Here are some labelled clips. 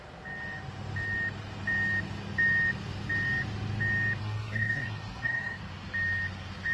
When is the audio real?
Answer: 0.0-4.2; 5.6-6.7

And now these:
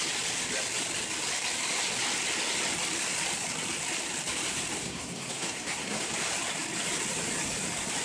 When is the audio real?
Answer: 0.0-4.8; 6.1-8.0

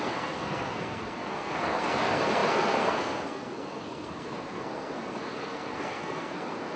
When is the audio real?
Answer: none

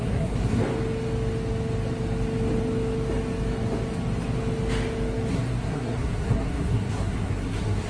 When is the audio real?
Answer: 0.6-5.3

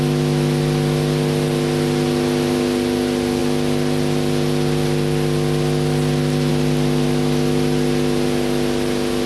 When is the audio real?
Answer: 0.0-9.3

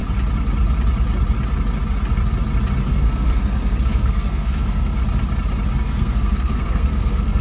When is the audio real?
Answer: 0.0-2.9; 5.0-5.8